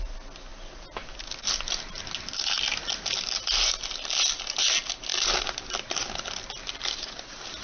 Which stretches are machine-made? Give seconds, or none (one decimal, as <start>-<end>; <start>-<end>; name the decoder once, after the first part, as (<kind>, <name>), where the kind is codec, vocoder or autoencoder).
none